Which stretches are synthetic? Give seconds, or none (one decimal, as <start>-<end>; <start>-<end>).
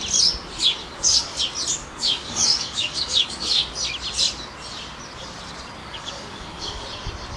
0.8-1.4; 1.8-3.7; 5.8-6.8